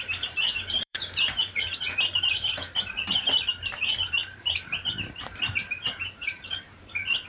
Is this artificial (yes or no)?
yes